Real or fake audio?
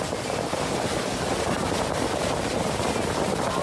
fake